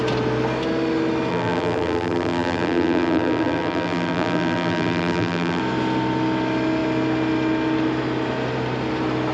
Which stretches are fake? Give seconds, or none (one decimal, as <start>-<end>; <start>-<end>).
1.3-5.6